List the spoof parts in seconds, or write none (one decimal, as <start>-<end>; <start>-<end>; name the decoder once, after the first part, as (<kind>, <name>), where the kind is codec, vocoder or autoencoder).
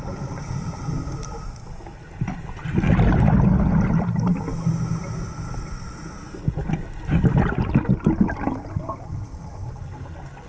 none